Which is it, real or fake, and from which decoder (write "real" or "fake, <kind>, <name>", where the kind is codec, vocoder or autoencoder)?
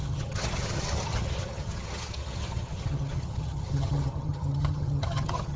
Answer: fake, vocoder, HiFi-GAN